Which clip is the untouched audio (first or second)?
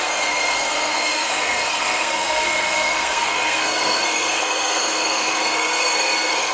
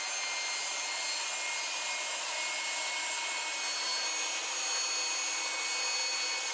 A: second